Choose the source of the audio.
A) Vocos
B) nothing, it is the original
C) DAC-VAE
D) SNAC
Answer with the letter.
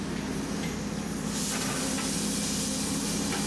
B